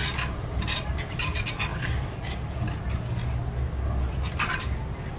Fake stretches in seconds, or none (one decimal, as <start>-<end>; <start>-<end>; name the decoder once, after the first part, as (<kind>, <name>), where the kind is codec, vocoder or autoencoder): none